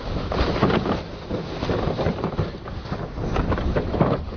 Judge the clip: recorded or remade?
remade